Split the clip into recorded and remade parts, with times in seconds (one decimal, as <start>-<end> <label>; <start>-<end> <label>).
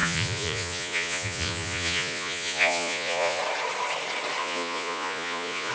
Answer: 0.0-3.4 remade; 3.4-4.4 recorded; 4.4-5.7 remade